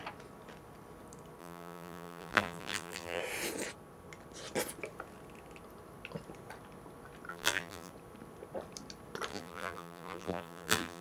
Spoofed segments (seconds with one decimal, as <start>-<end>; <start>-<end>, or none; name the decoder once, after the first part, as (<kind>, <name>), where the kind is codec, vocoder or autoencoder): 1.4-3.2 (vocoder, BigVGAN v2); 7.3-7.9; 9.3-11.0

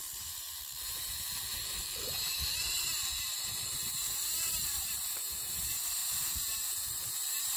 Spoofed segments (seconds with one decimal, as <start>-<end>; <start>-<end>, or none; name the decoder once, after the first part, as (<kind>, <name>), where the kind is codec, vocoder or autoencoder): 0.0-7.6 (vocoder, BigVGAN v2)

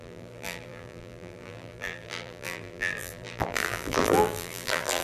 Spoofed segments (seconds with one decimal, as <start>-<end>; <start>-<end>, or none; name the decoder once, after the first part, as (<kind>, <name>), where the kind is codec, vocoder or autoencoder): 0.0-5.0 (vocoder, BigVGAN v2)

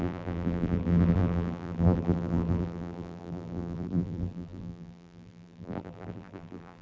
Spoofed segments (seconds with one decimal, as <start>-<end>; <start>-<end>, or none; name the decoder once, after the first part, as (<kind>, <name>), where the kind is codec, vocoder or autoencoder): 0.0-6.8 (vocoder, BigVGAN v2)

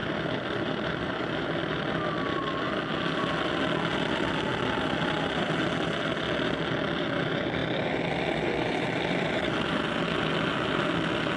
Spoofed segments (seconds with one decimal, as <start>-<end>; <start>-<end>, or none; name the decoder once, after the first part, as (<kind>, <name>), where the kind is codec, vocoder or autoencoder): 0.0-1.9 (vocoder, BigVGAN v2); 3.9-5.7; 7.6-9.7

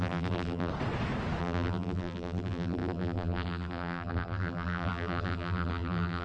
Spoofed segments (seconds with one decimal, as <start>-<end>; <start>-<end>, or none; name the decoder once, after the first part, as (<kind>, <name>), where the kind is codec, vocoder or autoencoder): 0.0-0.7 (vocoder, BigVGAN v2); 1.4-6.2

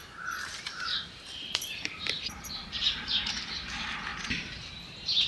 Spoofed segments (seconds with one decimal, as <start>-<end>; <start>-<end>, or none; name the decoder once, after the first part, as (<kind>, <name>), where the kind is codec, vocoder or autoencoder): 0.0-3.2 (vocoder, BigVGAN v2)

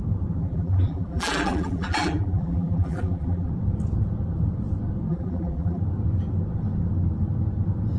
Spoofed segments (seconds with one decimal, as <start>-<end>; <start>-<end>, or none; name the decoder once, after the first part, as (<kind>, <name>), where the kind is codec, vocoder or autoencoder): 0.4-3.5 (vocoder, BigVGAN v2); 5.1-5.8